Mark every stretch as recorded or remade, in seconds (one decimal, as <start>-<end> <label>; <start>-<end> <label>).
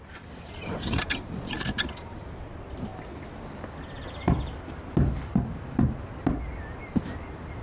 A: 0.0-7.6 recorded